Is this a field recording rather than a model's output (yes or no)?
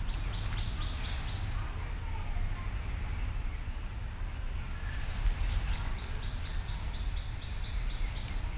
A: yes